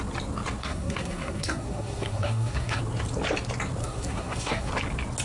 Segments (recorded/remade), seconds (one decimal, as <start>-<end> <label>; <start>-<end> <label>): 0.0-0.6 recorded; 0.6-2.8 remade; 2.8-3.8 recorded; 3.8-4.7 remade; 4.7-5.2 recorded